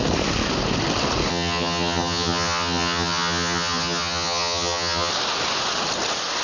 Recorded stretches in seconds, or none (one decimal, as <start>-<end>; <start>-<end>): 0.0-1.3; 5.1-6.4